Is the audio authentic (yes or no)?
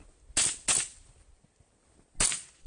yes